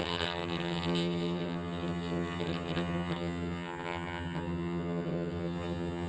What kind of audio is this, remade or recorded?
remade